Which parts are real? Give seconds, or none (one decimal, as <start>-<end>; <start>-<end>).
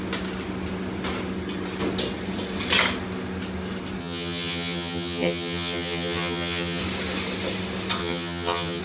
0.0-4.0; 6.8-8.0